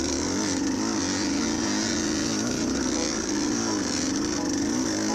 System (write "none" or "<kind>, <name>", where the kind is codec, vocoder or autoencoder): none